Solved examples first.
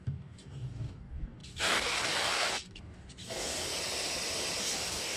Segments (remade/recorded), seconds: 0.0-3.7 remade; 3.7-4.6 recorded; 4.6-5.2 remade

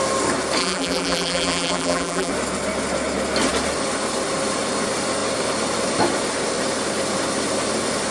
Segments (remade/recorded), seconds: 0.0-0.6 recorded; 0.6-2.3 remade; 2.3-8.1 recorded

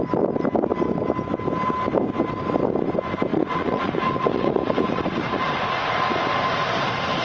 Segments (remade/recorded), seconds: 0.0-3.3 recorded; 3.3-6.2 remade; 6.2-7.2 recorded

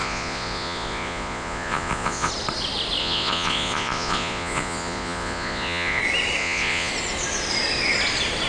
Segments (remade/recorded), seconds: 0.0-2.3 remade; 2.3-3.0 recorded; 3.0-6.0 remade; 6.0-6.4 recorded; 6.4-6.9 remade; 6.9-8.5 recorded

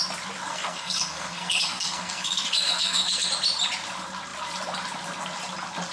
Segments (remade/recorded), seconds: 0.0-0.5 recorded; 0.5-3.3 remade; 3.3-5.9 recorded

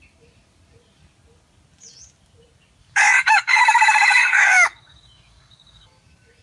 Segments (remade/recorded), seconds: 0.0-2.8 recorded; 2.8-5.9 remade; 5.9-6.4 recorded

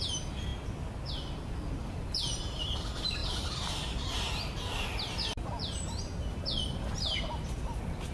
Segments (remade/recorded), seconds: 0.0-8.1 recorded

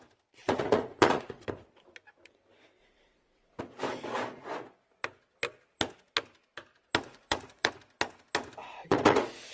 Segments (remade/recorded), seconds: 0.0-0.4 recorded; 0.4-1.5 remade; 1.5-2.8 recorded; 2.8-3.6 remade; 3.6-7.1 recorded; 7.1-7.7 remade; 7.7-8.6 recorded; 8.6-9.5 remade